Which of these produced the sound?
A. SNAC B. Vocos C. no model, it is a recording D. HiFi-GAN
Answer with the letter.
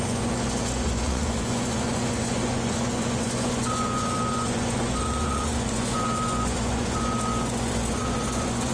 B